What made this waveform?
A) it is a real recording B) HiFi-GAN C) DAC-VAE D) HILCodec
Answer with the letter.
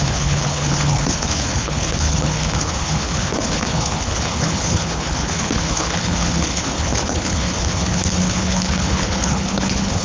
D